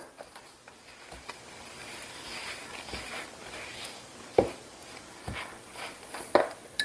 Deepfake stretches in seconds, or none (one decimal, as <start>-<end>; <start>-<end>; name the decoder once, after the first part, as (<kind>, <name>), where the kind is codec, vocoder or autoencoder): none